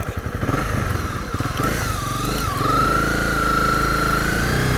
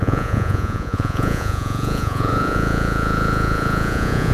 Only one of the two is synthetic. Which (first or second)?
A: second